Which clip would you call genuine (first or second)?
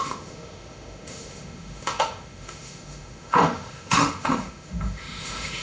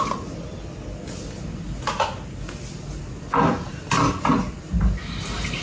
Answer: second